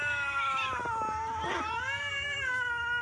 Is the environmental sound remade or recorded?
recorded